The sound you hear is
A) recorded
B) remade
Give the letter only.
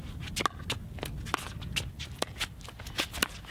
A